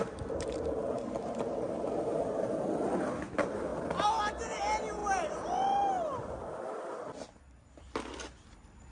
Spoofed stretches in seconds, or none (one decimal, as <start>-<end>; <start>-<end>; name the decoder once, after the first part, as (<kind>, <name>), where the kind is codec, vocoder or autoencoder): 0.0-3.3 (vocoder, BigVGAN v2); 3.7-4.6; 5.0-8.9

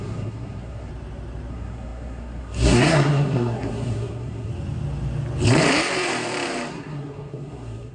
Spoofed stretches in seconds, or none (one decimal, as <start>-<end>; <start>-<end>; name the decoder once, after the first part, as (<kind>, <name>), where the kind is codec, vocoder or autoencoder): 0.0-0.9 (codec, SNAC); 1.5-4.5; 6.7-7.9

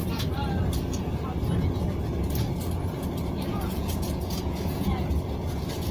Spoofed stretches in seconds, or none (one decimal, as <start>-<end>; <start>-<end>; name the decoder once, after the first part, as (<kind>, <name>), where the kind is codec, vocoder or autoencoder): 3.5-5.1 (vocoder, Vocos)

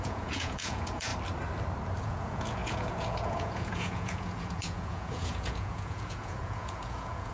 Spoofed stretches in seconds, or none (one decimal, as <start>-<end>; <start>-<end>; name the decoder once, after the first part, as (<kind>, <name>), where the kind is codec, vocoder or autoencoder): 0.0-1.1 (vocoder, Vocos); 2.0-7.3

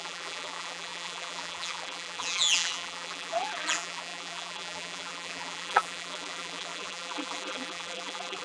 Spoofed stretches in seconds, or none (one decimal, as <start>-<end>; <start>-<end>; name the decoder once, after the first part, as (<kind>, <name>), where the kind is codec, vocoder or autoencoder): 0.0-8.4 (vocoder, BigVGAN v2)

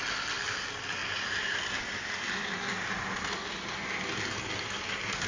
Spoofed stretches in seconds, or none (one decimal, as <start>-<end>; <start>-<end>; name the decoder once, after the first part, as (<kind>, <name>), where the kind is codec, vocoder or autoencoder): none